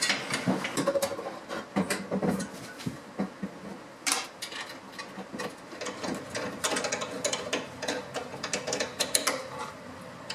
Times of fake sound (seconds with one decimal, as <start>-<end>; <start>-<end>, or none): none